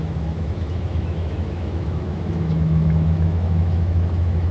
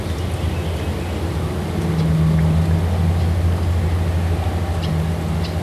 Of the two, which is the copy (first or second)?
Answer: first